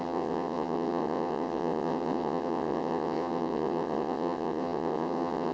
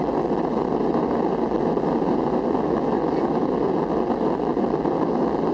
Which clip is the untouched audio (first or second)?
second